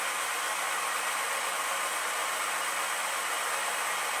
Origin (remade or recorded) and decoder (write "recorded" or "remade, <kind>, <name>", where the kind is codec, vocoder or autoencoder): recorded